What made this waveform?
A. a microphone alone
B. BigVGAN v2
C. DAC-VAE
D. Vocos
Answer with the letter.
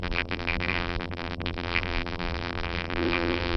B